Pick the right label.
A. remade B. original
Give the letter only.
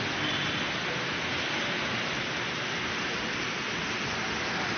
B